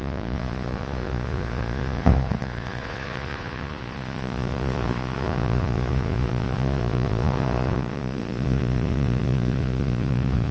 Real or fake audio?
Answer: fake